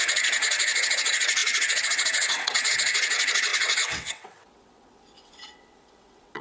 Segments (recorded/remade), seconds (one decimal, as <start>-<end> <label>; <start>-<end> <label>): 0.0-6.4 remade

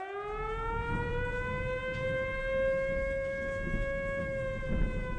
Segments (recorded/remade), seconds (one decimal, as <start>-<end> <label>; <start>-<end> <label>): 0.0-5.2 recorded

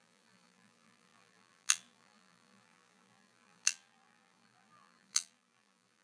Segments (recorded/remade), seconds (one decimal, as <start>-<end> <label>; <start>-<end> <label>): 0.0-6.0 remade

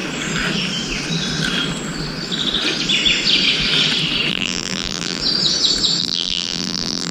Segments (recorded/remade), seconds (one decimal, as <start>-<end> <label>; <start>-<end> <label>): 0.0-4.3 recorded; 4.3-5.2 remade; 5.2-6.0 recorded; 6.0-7.1 remade

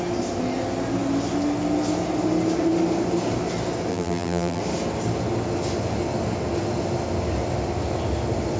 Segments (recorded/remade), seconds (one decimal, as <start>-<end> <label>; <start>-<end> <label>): 0.0-3.9 recorded; 3.9-4.6 remade; 4.6-8.6 recorded

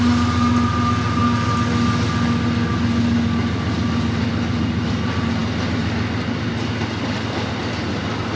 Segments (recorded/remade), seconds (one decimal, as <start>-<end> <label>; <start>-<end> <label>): 0.0-8.4 recorded